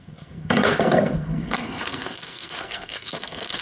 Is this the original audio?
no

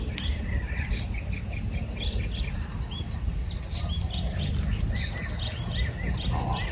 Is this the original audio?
yes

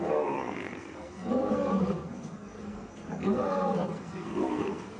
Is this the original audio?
no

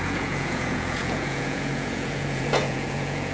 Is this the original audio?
no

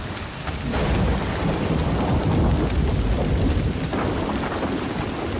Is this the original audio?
yes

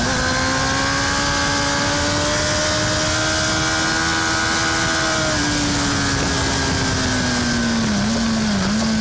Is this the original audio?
yes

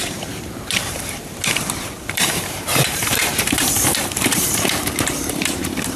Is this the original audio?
no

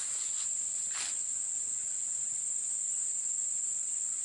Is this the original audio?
yes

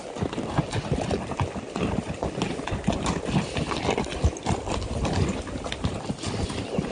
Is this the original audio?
yes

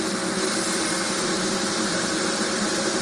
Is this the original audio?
yes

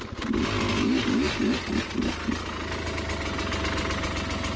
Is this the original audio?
yes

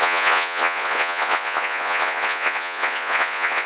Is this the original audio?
no